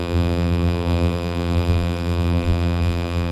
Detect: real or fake fake